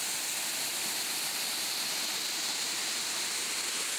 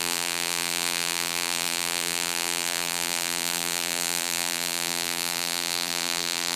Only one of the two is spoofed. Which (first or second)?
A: second